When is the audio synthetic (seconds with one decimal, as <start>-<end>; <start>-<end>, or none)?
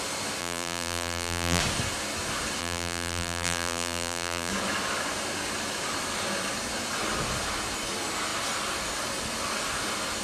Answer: 0.4-1.6; 2.6-4.5